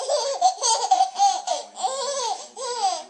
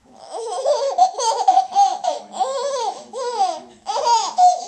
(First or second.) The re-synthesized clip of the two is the second